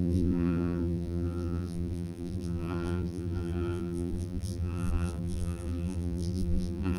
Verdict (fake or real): fake